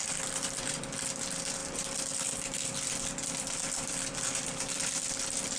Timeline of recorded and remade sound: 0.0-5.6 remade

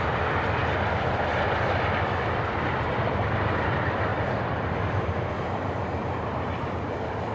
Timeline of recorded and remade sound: 0.0-6.0 recorded; 6.0-6.5 remade; 6.5-7.3 recorded